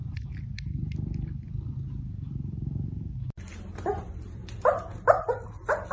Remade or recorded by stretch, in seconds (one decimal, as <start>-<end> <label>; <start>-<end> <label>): 0.0-3.5 recorded; 3.5-5.1 remade; 5.1-5.9 recorded